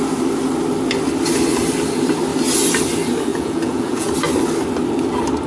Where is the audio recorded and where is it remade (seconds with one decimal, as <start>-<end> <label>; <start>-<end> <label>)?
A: 0.0-3.3 recorded; 3.3-4.1 remade; 4.1-5.5 recorded